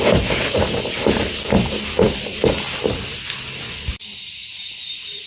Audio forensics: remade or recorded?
recorded